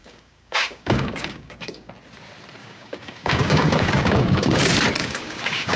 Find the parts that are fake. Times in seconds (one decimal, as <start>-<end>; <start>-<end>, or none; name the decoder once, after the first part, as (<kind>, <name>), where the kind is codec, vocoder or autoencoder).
0.0-1.9 (codec, DAC); 2.6-4.6; 5.0-5.8